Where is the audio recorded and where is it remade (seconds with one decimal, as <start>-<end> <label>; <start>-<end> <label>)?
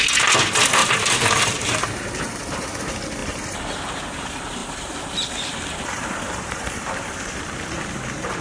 0.0-0.8 recorded; 0.8-2.4 remade; 2.4-3.2 recorded; 3.2-4.0 remade; 4.0-4.6 recorded; 4.6-6.8 remade; 6.8-8.4 recorded